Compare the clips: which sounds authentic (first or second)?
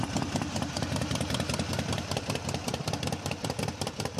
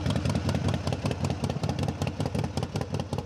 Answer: second